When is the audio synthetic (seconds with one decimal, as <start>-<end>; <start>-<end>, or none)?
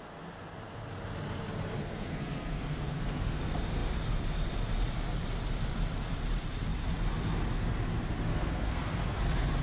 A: 1.8-3.4; 8.3-9.2